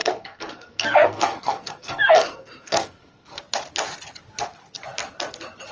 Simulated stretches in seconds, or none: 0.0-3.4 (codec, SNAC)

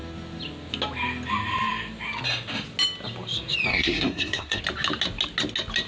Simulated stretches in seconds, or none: 3.7-4.6 (codec, SNAC)

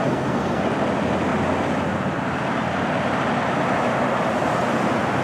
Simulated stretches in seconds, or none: 0.0-0.6 (codec, SNAC)

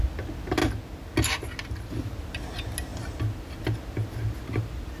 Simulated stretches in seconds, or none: none